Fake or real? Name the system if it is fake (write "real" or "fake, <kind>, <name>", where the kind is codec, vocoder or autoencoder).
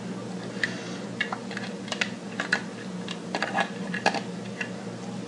real